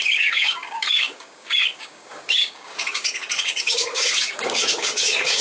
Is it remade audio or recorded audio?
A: remade